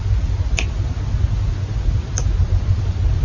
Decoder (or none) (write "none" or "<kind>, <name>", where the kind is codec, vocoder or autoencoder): none